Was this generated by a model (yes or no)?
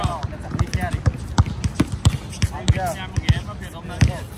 no